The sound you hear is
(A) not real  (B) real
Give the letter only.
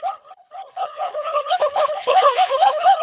A